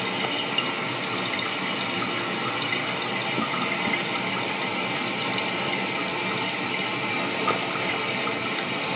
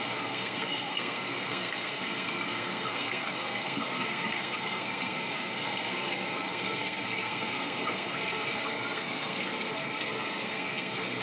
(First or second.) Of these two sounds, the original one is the first